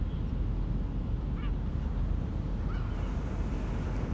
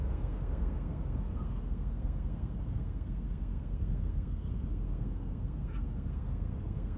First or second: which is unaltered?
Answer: first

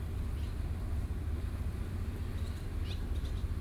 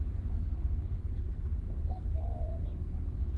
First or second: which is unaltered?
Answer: first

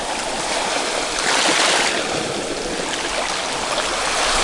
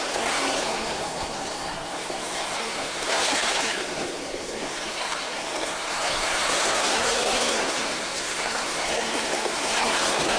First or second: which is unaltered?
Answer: first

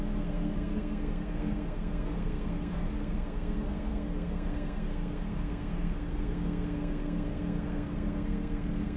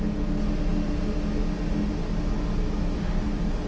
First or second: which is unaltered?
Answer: second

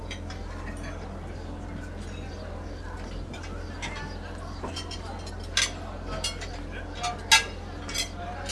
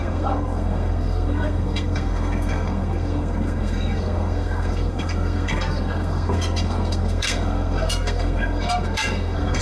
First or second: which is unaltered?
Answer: first